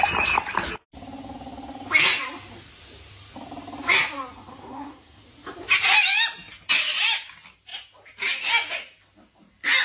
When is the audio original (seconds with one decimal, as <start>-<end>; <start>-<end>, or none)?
0.0-4.5; 5.2-9.8

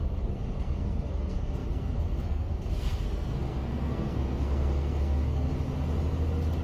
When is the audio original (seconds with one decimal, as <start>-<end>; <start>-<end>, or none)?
5.5-6.6

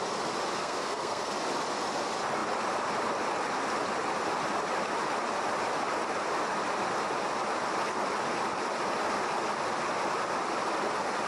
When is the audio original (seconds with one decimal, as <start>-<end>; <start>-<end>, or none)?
0.0-0.6; 1.3-11.3

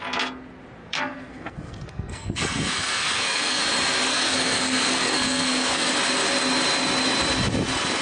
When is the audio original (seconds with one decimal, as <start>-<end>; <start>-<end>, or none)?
0.0-0.8; 3.6-4.1; 5.9-8.0

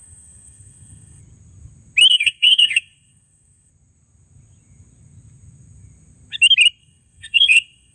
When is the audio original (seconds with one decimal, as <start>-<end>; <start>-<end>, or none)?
1.2-2.1; 3.7-6.8